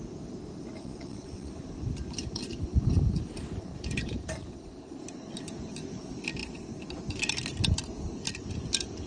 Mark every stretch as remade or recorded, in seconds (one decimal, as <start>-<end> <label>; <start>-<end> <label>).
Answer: 0.0-0.8 recorded; 0.8-1.5 remade; 1.5-9.1 recorded